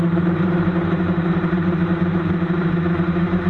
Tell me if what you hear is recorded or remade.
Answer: remade